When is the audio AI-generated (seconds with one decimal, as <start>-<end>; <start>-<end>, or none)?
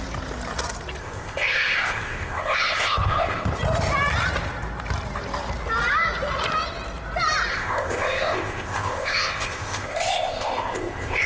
1.0-3.5; 7.5-11.3